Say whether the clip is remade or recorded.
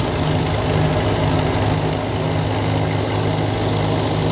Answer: recorded